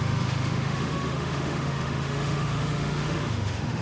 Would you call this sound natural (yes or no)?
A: no